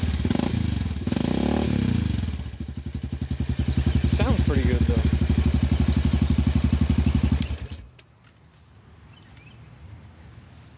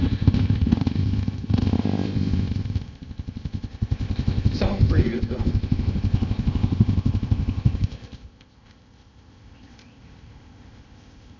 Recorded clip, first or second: first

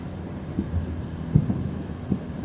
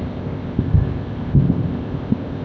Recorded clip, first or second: first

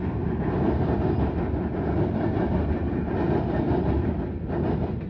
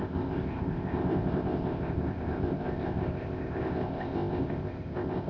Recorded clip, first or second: first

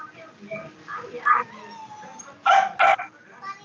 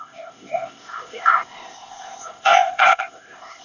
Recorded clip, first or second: first